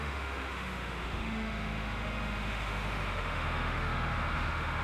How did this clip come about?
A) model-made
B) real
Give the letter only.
A